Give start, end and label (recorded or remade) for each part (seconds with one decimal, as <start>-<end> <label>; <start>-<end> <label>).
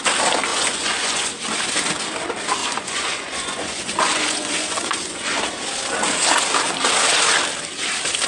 0.0-0.5 recorded; 0.5-1.3 remade; 1.3-2.6 recorded; 2.6-5.4 remade; 5.4-8.3 recorded